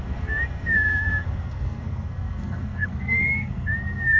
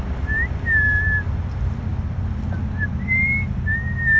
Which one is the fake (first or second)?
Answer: first